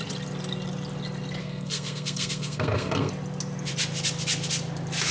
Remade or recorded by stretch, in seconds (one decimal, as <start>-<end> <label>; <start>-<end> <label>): 0.0-1.4 recorded; 1.4-3.1 remade; 3.1-5.1 recorded